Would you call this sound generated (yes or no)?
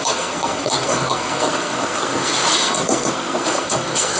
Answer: yes